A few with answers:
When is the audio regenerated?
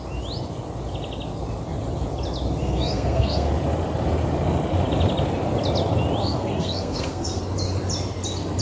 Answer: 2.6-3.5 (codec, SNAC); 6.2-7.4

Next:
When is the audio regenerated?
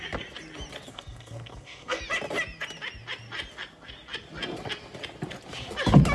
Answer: 0.9-2.0 (codec, SNAC)